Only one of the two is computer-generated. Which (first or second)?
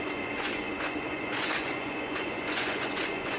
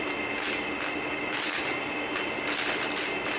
first